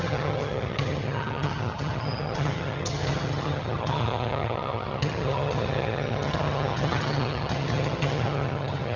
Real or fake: fake